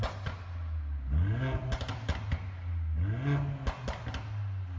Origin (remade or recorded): recorded